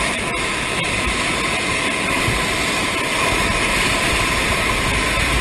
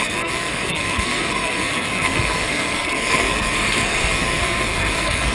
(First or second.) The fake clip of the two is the second